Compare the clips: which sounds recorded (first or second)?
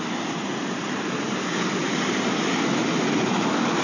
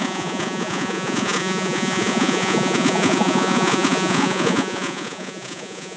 first